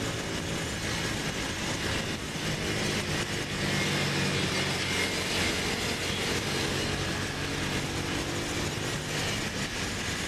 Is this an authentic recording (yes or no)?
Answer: yes